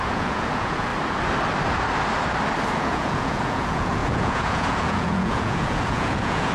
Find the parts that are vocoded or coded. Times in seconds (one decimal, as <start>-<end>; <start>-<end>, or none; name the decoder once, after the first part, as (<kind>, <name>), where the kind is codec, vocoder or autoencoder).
0.0-0.9 (vocoder, Vocos); 2.7-6.5